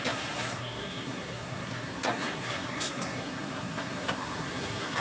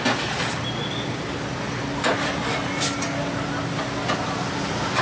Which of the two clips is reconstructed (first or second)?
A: first